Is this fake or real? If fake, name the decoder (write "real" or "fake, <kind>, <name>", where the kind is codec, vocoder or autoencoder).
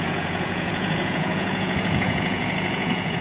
fake, vocoder, Vocos